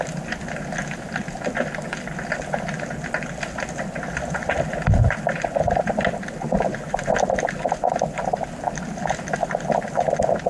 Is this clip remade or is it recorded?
recorded